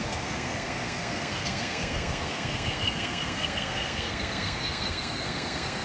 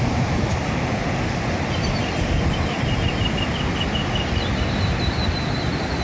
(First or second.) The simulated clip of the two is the first